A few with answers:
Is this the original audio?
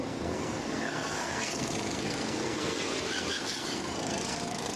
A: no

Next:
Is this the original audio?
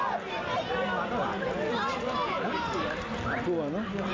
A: yes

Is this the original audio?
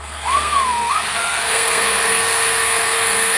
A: no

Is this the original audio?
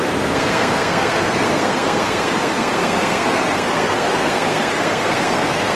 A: no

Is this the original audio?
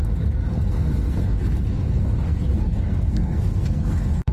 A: no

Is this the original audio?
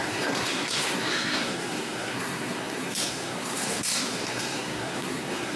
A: no